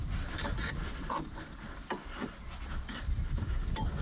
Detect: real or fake real